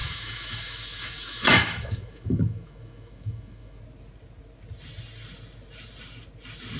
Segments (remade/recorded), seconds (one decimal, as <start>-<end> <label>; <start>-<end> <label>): 0.0-3.8 remade; 3.8-6.8 recorded